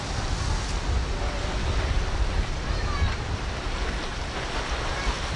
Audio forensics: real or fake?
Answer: real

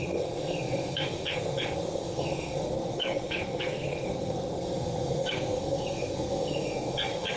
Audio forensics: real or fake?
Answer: fake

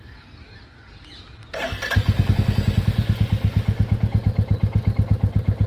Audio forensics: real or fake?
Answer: real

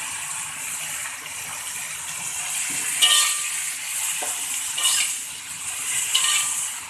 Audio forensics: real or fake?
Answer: real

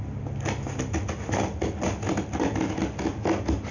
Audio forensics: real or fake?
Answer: real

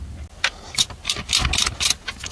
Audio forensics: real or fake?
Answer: real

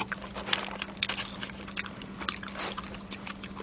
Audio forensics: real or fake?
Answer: real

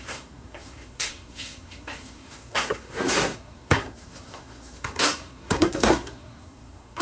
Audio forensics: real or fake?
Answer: fake